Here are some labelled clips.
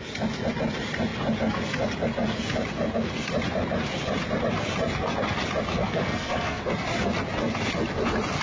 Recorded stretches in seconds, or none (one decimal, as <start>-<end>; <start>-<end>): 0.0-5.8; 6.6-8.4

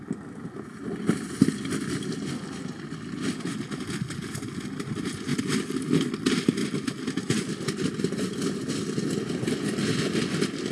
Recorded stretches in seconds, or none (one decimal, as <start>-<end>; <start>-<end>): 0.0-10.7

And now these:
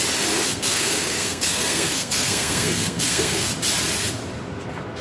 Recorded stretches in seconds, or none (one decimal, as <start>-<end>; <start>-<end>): 0.0-0.5; 3.5-5.0

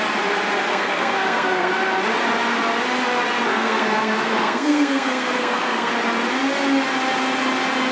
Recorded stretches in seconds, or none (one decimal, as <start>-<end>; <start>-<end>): 0.0-0.7; 1.7-3.5; 5.9-7.9

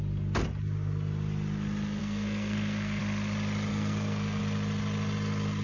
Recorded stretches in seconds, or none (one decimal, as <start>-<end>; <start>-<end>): 0.0-2.0; 3.0-3.7; 4.4-5.6